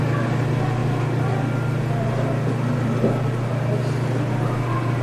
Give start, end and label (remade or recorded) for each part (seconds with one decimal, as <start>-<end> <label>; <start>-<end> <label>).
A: 0.0-5.0 recorded